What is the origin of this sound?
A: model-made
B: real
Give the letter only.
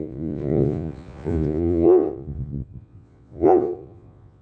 A